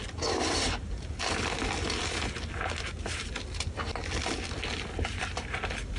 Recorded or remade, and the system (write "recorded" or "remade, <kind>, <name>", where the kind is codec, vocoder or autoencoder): recorded